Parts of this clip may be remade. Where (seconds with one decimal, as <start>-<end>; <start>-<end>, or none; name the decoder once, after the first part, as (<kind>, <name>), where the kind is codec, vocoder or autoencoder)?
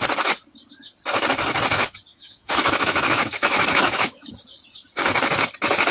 2.1-4.3 (autoencoder, DAC-VAE)